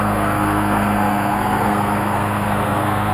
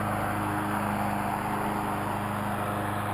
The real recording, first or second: second